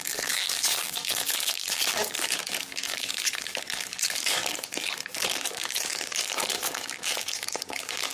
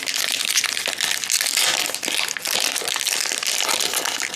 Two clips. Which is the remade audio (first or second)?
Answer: first